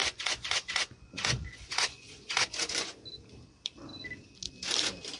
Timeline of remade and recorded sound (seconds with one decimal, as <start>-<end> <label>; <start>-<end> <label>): 0.0-3.0 remade; 3.0-5.2 recorded